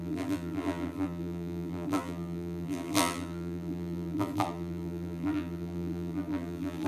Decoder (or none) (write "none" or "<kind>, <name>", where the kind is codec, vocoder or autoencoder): vocoder, BigVGAN v2